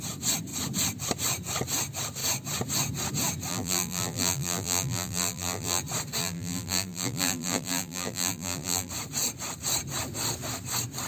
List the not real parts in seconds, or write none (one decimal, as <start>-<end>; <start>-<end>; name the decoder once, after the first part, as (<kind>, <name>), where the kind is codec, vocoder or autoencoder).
3.5-5.8 (vocoder, BigVGAN v2); 6.2-8.9